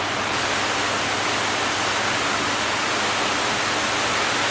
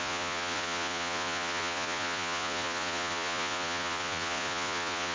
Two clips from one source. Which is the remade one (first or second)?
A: second